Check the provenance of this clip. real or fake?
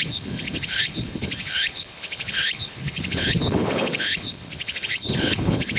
fake